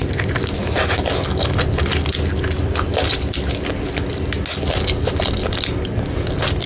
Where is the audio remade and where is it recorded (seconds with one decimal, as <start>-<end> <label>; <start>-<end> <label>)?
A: 0.0-6.7 recorded

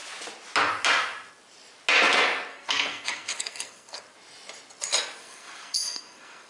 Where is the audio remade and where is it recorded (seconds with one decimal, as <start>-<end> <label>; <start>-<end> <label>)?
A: 0.0-2.5 recorded; 2.5-4.0 remade; 4.0-5.2 recorded; 5.2-6.5 remade

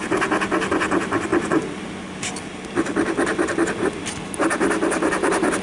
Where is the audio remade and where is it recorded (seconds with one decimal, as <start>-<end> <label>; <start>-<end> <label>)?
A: 0.0-5.6 recorded

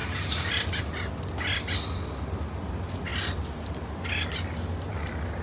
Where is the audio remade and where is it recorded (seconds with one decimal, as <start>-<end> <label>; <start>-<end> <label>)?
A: 0.0-1.1 remade; 1.1-5.4 recorded

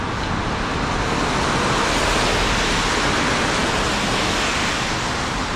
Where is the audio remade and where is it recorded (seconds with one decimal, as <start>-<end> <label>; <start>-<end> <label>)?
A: 0.0-5.6 recorded